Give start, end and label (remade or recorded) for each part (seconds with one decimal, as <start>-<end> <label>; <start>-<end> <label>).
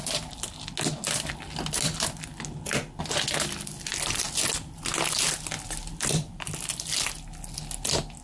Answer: 0.0-8.2 recorded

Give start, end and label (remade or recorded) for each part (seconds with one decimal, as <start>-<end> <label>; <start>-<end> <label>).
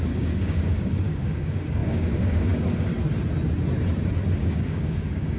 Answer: 0.0-2.9 remade; 2.9-4.4 recorded; 4.4-5.4 remade